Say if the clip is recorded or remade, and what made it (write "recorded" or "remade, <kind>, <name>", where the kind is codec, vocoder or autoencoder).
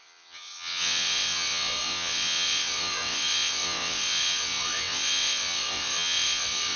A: remade, vocoder, WaveNeXt